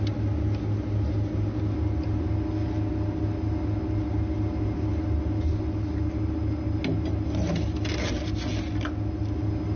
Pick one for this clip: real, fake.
real